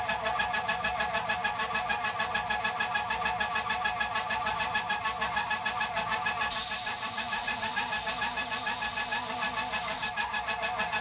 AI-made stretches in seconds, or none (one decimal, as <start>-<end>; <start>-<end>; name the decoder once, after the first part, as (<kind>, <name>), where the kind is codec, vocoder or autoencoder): 6.9-7.7 (vocoder, Vocos)